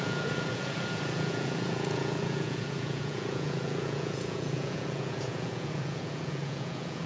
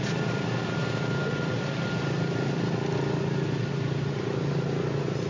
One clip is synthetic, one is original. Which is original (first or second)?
second